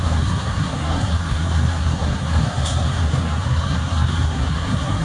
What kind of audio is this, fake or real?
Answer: fake